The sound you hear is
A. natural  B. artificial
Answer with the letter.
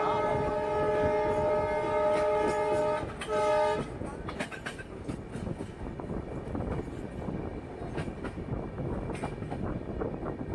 A